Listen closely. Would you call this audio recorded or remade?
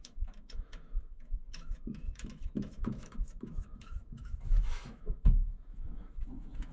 remade